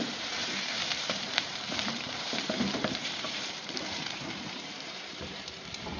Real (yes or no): no